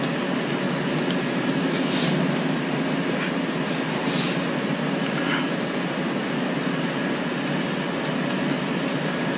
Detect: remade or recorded recorded